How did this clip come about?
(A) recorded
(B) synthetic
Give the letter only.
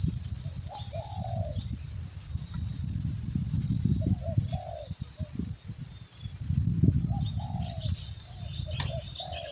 A